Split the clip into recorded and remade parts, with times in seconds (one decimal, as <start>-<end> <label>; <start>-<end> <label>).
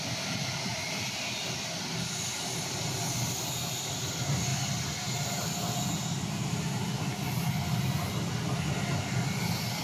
0.0-9.8 recorded